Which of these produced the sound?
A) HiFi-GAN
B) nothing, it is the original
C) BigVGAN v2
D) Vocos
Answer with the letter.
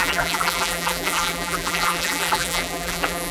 C